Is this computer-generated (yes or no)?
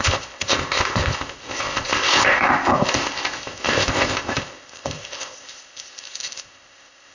yes